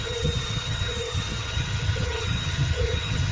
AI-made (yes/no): yes